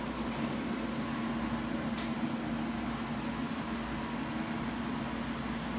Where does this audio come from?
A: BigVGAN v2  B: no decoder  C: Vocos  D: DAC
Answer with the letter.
B